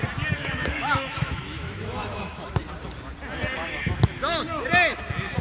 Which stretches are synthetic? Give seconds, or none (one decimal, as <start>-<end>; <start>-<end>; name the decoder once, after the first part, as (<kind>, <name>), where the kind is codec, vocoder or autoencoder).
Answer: 0.4-2.5 (autoencoder, DAC-VAE); 3.6-4.4